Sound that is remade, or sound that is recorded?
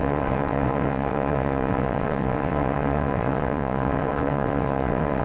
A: remade